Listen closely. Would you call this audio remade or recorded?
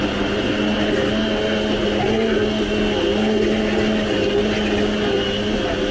recorded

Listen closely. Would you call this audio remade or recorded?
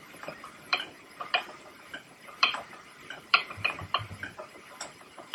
remade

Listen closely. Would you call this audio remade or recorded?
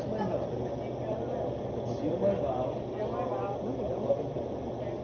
recorded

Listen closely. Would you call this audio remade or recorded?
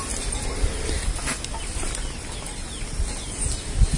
recorded